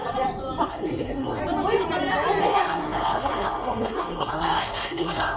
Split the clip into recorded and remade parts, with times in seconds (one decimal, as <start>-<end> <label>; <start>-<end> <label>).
0.0-0.7 recorded; 0.7-1.4 remade; 1.4-2.4 recorded; 2.4-5.4 remade